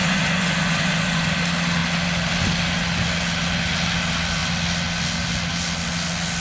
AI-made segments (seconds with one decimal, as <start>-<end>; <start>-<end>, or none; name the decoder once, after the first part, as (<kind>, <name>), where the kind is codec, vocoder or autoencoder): 0.0-1.4 (vocoder, Vocos)